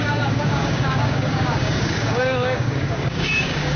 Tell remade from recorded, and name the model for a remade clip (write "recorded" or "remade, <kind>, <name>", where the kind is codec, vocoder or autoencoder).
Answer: remade, codec, DAC